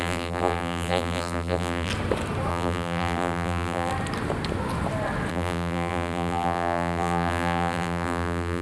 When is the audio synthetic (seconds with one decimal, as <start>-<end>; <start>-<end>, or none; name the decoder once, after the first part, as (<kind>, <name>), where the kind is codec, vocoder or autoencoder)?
0.0-1.9 (vocoder, BigVGAN v2); 2.5-3.9; 5.3-8.6